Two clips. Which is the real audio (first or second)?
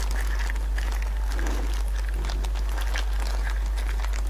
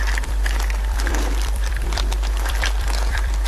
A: first